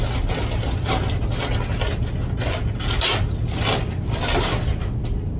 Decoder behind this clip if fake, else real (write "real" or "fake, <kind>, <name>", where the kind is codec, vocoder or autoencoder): real